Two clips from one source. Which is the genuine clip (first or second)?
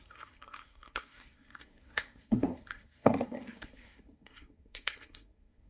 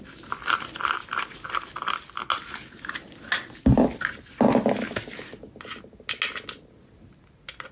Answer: second